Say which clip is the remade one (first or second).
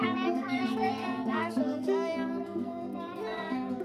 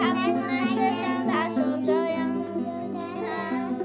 first